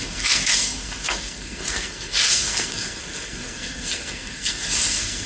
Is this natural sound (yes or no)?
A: no